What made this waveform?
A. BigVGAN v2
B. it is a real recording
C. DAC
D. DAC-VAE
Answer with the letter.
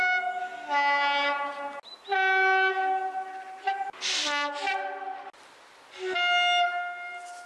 B